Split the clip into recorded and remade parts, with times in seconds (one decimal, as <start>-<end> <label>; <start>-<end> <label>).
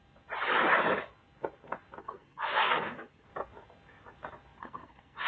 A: 0.0-2.0 recorded; 2.0-3.3 remade; 3.3-4.6 recorded; 4.6-5.3 remade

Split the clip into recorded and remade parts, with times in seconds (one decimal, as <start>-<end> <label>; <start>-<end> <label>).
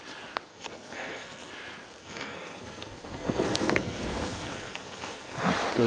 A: 0.0-0.5 recorded; 0.5-1.5 remade; 1.5-2.0 recorded; 2.0-5.5 remade; 5.5-5.9 recorded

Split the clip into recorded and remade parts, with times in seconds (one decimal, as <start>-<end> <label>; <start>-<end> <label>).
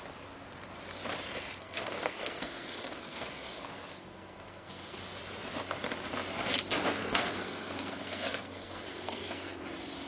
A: 0.0-1.6 recorded; 1.6-5.0 remade; 5.0-7.0 recorded; 7.0-9.6 remade; 9.6-10.1 recorded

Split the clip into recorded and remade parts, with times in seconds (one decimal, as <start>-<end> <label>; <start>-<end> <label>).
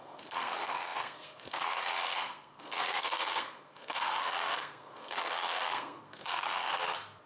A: 0.0-6.7 remade; 6.7-7.3 recorded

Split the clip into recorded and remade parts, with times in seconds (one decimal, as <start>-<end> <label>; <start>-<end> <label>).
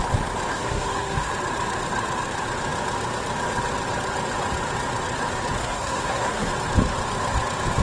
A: 0.0-0.5 recorded; 0.5-1.3 remade; 1.3-5.6 recorded; 5.6-6.5 remade; 6.5-7.8 recorded